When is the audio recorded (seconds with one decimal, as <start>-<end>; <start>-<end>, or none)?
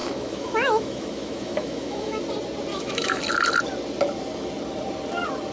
2.2-2.7; 3.2-5.5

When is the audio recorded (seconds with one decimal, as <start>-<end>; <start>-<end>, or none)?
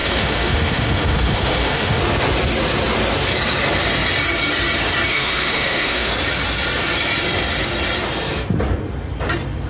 2.0-5.1; 6.1-9.7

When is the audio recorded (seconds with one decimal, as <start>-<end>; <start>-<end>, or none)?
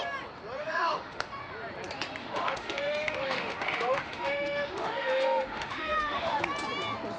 0.0-0.6; 1.3-2.2; 6.4-7.2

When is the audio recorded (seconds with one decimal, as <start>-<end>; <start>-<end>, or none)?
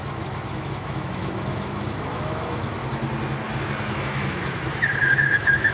2.8-3.9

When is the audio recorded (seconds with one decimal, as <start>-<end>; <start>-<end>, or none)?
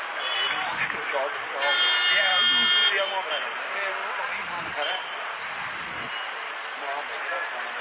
0.0-7.8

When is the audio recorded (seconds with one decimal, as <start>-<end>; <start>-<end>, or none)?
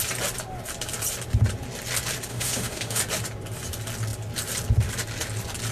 0.0-2.3; 3.0-5.7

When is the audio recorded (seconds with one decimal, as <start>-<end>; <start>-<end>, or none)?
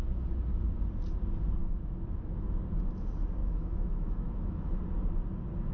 0.0-1.6; 2.4-3.4; 4.8-5.7